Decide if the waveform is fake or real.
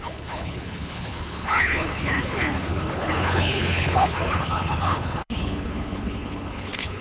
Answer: fake